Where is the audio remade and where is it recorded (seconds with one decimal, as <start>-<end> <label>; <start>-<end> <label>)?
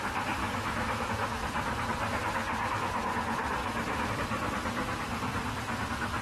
0.0-0.4 recorded; 0.4-1.1 remade; 1.1-3.6 recorded; 3.6-4.1 remade; 4.1-6.2 recorded